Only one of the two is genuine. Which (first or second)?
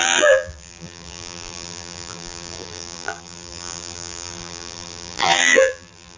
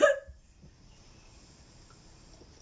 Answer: second